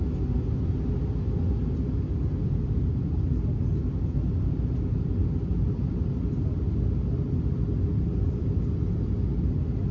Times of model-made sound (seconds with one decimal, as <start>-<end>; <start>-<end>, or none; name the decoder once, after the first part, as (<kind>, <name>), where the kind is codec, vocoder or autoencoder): 2.4-2.9 (vocoder, BigVGAN v2); 7.9-9.9